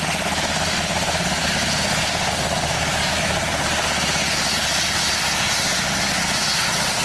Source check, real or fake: real